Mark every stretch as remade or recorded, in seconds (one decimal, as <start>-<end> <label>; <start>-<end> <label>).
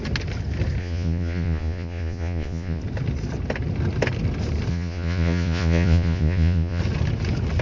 0.0-0.8 recorded; 0.8-2.8 remade; 2.8-4.7 recorded; 4.7-6.8 remade; 6.8-7.6 recorded